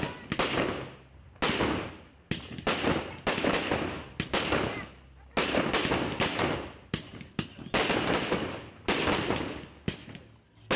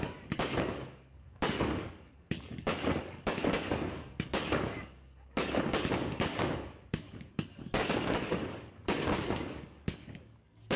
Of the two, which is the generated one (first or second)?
second